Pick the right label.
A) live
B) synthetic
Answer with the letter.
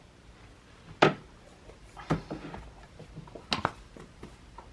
A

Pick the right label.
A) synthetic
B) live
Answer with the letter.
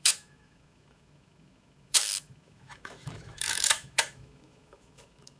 A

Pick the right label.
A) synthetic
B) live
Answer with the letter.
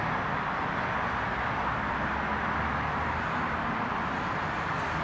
B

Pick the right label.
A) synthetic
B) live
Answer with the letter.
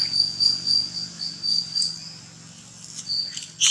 B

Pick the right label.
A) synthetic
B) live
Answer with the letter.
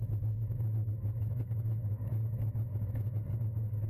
A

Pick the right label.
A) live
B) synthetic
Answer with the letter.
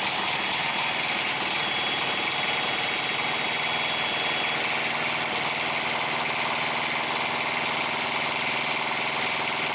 A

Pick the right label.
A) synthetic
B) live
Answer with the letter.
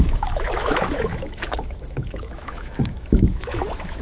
A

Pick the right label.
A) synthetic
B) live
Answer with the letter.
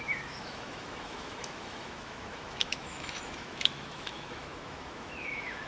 A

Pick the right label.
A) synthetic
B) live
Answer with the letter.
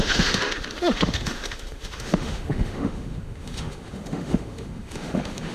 A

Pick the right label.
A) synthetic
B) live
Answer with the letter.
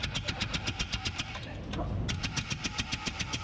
B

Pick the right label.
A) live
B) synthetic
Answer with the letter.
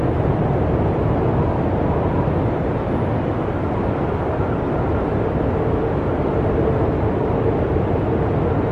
A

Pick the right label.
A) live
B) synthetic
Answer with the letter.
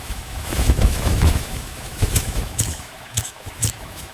B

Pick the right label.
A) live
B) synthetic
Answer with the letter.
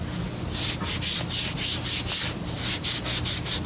A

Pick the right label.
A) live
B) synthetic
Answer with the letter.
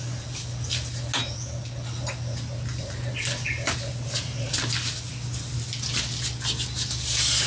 A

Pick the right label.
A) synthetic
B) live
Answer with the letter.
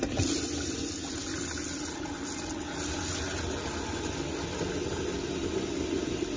B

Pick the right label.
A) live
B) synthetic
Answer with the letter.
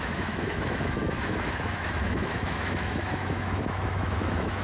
B